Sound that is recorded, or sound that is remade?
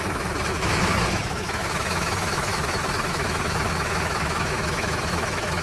remade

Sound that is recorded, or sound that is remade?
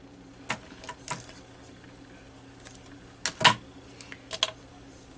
recorded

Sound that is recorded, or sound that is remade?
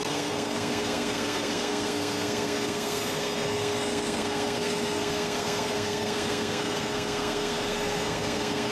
remade